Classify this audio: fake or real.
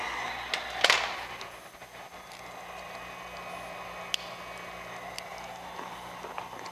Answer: real